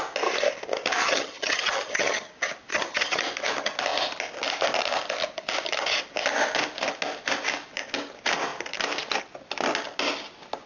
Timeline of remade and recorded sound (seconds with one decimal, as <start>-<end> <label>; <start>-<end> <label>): 0.0-1.0 recorded; 1.0-2.3 remade; 2.3-2.7 recorded; 2.7-3.2 remade; 3.2-10.7 recorded